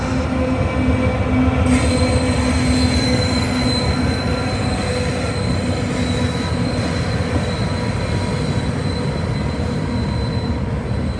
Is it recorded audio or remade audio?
recorded